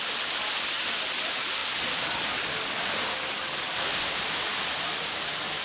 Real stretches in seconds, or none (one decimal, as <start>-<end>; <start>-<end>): 0.0-5.6